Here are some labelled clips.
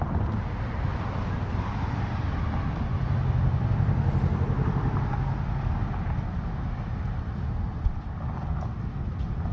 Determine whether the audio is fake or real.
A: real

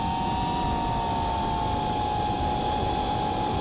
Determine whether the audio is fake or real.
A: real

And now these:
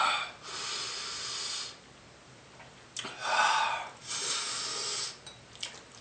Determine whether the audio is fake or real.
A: real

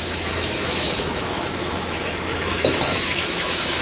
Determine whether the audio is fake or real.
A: fake